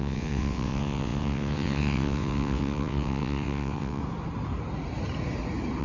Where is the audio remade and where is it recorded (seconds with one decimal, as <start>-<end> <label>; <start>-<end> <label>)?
0.0-4.0 remade; 4.0-5.8 recorded